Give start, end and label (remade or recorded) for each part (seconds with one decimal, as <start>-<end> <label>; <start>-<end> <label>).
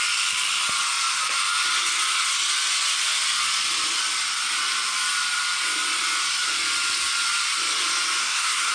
0.0-8.2 recorded; 8.2-8.7 remade